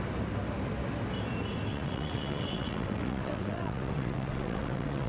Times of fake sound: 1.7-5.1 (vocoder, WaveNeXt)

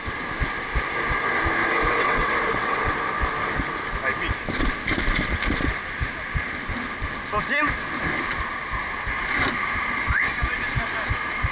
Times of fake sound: 1.6-2.8 (vocoder, WaveNeXt)

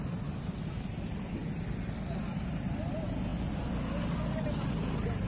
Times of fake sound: none

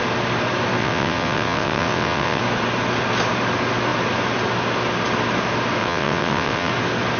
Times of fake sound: 0.8-2.4 (vocoder, WaveNeXt); 5.8-6.7

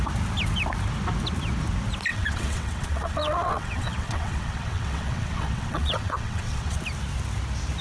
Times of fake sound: 2.1-6.8 (vocoder, WaveNeXt)